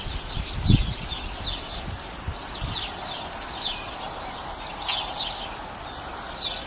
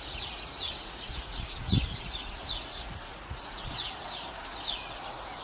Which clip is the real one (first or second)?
first